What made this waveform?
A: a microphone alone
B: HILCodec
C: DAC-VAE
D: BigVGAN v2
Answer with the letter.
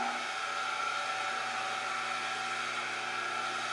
A